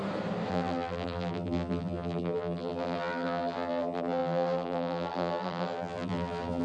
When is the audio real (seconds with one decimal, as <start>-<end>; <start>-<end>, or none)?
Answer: 0.0-0.5